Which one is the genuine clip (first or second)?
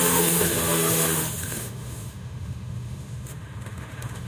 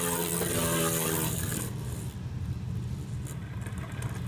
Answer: second